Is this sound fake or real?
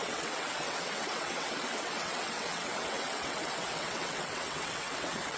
fake